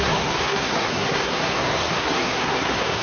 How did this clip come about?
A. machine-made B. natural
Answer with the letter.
A